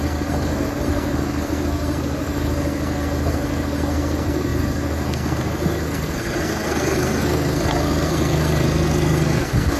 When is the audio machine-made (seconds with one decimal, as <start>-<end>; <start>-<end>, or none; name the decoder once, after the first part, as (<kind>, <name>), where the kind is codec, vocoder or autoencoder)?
0.0-9.8 (codec, SNAC)